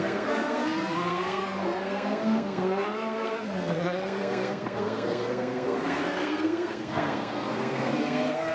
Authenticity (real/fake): fake